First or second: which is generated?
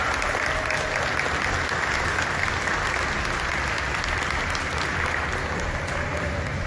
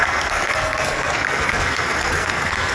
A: second